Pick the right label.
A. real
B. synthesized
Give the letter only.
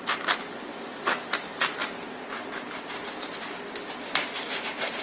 A